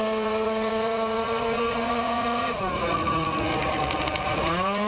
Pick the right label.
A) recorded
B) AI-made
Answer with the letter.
B